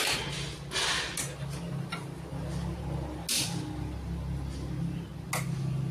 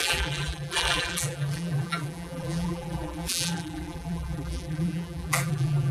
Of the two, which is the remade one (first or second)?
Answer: second